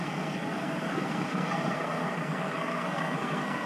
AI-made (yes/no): yes